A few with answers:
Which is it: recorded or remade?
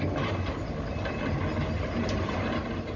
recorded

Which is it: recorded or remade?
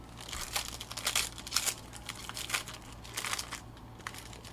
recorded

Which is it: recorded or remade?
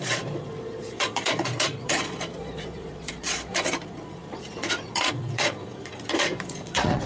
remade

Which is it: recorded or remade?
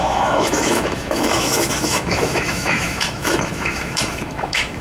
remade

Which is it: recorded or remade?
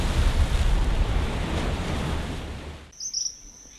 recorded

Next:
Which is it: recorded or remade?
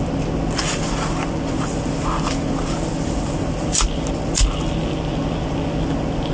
recorded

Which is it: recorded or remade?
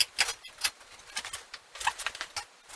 recorded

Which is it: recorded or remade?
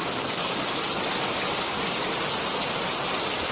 recorded